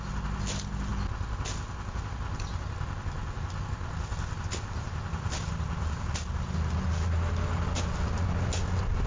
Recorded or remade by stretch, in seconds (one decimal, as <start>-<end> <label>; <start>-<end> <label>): 0.0-9.1 recorded